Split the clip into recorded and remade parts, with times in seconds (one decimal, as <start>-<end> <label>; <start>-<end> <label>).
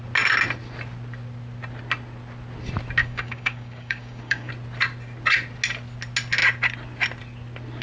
0.0-3.0 recorded; 3.0-4.5 remade; 4.5-7.8 recorded